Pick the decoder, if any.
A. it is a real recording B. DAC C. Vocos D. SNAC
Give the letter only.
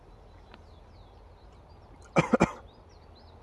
A